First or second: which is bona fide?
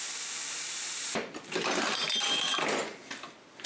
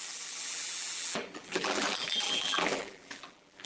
first